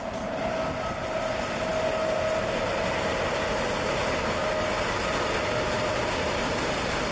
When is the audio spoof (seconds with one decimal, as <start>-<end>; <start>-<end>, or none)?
none